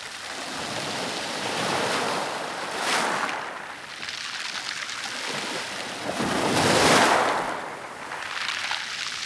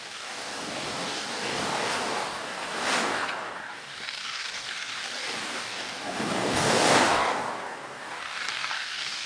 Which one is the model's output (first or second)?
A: second